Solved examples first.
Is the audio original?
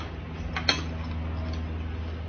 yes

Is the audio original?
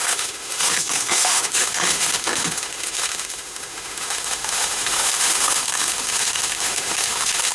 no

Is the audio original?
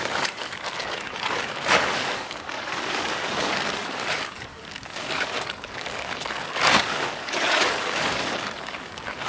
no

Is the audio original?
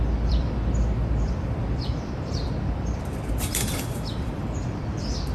no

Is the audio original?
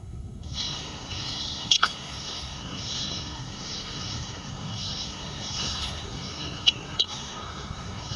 no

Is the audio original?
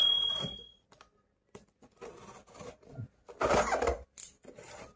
yes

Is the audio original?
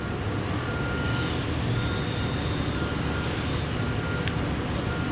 yes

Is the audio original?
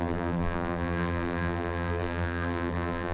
no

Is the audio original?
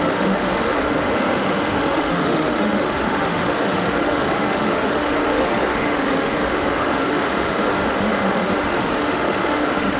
no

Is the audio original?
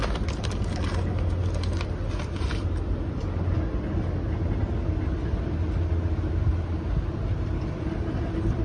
yes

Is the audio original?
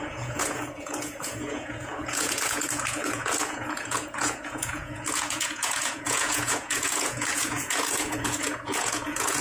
no